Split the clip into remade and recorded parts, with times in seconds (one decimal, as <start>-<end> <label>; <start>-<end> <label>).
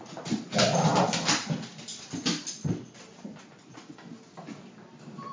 0.0-5.3 recorded